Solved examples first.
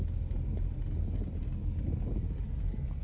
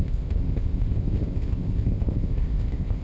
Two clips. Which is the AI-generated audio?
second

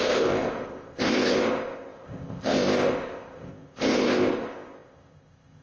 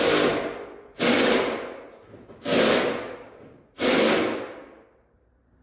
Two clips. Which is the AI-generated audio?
first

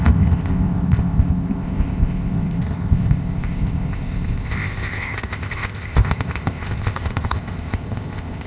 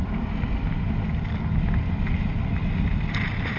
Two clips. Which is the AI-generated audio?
first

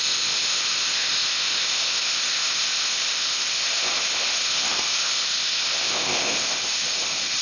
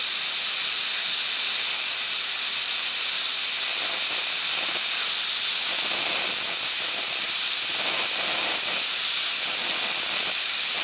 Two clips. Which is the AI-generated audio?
first